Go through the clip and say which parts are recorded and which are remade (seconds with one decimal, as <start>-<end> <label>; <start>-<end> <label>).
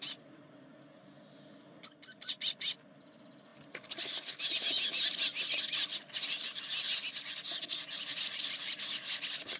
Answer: 0.0-9.6 recorded